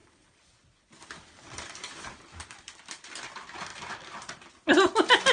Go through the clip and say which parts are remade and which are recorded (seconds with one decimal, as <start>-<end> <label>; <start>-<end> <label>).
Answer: 0.0-3.2 remade; 3.2-3.7 recorded; 3.7-4.5 remade; 4.5-5.3 recorded